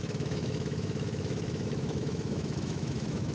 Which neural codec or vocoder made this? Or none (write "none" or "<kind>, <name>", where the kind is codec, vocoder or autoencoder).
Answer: autoencoder, DAC-VAE